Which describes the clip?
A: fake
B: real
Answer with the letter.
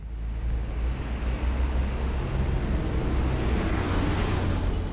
B